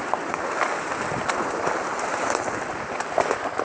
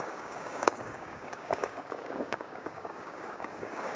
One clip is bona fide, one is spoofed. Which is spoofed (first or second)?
second